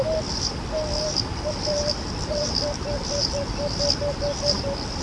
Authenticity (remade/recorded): recorded